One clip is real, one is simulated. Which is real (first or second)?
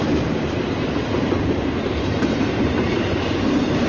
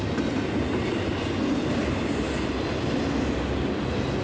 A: second